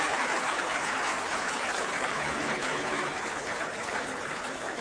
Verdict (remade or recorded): remade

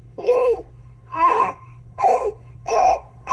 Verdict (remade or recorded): remade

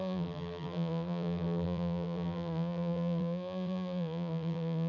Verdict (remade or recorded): remade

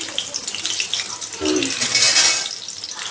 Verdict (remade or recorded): recorded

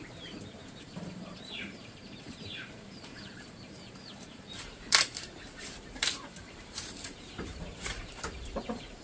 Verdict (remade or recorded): remade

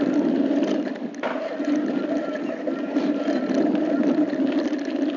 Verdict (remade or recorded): recorded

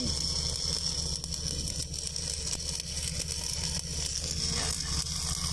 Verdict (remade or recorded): recorded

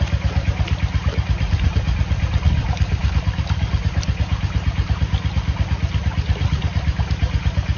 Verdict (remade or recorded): recorded